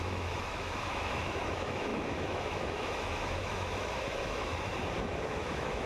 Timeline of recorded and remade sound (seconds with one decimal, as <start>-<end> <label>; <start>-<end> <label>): 0.0-4.7 remade; 4.7-5.4 recorded; 5.4-5.9 remade